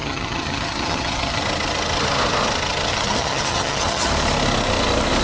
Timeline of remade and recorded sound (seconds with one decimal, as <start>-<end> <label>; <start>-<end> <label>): 0.0-1.4 remade; 1.4-2.9 recorded; 2.9-4.1 remade; 4.1-5.2 recorded